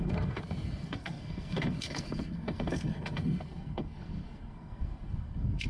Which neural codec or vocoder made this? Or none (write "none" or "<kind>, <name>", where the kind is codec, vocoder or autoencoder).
codec, SNAC